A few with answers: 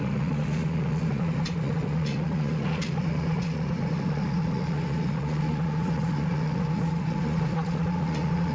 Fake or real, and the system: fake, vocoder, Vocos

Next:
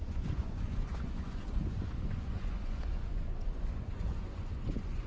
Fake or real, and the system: fake, vocoder, Vocos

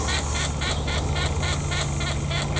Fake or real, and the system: real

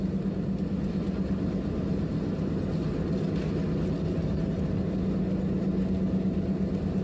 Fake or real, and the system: real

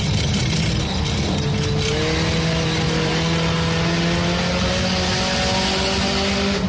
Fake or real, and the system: real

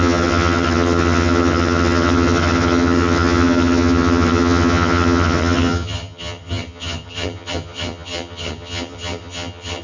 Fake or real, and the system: fake, vocoder, HiFi-GAN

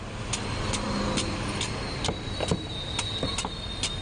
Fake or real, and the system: real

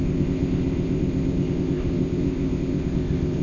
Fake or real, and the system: fake, codec, ZipCodec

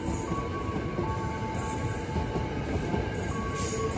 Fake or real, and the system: real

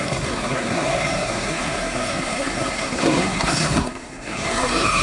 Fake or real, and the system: fake, codec, SNAC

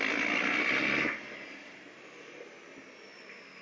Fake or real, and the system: real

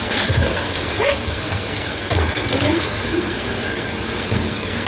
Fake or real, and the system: fake, codec, SNAC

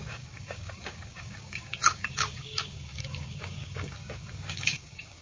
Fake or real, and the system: fake, codec, DAC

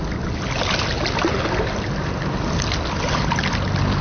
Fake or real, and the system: real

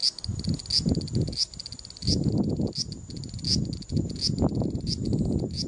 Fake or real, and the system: real